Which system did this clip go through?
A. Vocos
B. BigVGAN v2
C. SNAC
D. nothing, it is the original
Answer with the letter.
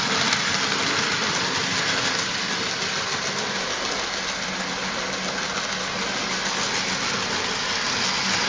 D